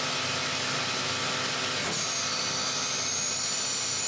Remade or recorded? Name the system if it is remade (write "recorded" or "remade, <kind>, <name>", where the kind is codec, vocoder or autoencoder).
recorded